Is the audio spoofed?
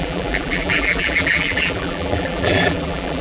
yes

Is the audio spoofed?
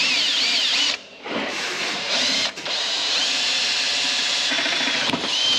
yes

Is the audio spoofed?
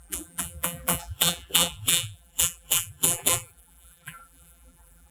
yes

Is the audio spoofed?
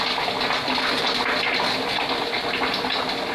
no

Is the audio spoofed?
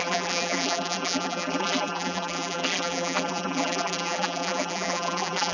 yes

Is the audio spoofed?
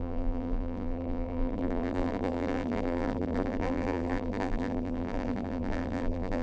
yes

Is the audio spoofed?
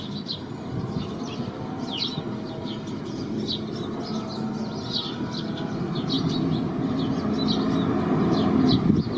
no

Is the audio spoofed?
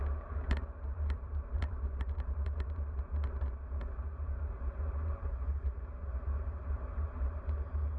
yes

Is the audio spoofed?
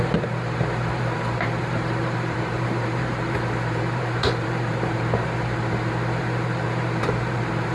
yes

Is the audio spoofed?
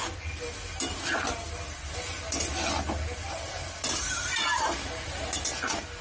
no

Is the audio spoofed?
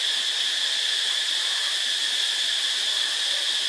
no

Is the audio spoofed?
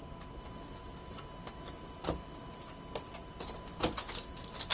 no